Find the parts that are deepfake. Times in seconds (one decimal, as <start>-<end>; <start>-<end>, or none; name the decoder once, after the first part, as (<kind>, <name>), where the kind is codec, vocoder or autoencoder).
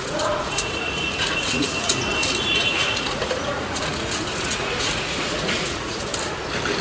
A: 0.0-1.9 (vocoder, Vocos); 2.4-6.1